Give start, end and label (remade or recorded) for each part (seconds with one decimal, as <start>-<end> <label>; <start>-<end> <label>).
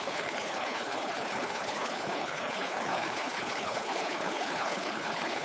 0.0-5.4 remade